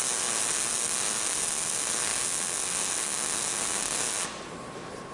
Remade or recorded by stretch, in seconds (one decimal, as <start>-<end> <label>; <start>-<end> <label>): 0.0-5.1 recorded